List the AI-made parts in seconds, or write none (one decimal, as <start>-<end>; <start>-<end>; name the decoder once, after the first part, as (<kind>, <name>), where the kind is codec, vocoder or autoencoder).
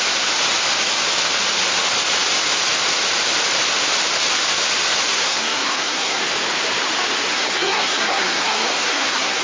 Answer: 5.1-6.2 (codec, SNAC); 7.3-9.4